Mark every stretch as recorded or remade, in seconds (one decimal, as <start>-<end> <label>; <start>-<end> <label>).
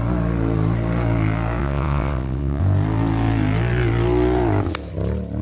0.0-1.6 recorded; 1.6-2.6 remade; 2.6-5.4 recorded